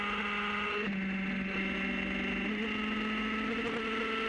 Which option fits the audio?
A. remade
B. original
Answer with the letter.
B